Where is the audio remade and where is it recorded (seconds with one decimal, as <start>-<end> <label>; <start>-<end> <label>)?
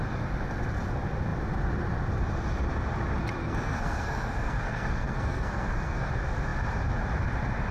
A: 0.0-3.4 recorded; 3.4-6.1 remade; 6.1-7.7 recorded